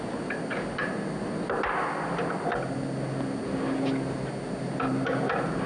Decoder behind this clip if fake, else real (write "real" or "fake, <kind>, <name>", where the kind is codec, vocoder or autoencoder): real